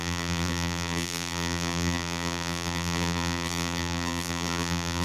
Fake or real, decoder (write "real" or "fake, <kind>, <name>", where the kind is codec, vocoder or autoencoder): fake, vocoder, BigVGAN v2